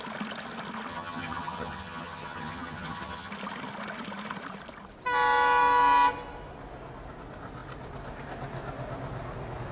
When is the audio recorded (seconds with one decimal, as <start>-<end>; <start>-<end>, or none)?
0.0-0.9; 3.3-9.7